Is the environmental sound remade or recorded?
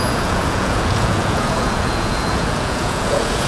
remade